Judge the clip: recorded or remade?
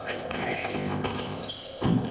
remade